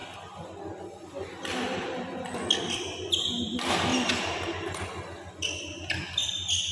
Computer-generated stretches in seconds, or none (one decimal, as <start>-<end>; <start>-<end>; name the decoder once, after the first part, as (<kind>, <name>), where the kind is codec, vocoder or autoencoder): 3.9-4.8 (vocoder, BigVGAN v2); 6.2-6.7